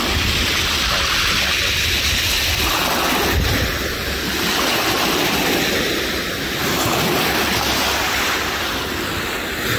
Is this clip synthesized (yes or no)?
no